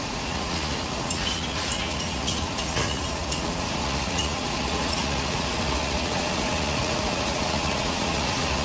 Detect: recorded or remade remade